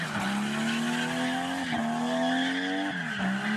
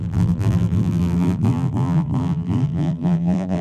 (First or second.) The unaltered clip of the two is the first